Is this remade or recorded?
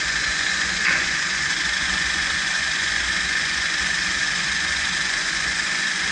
remade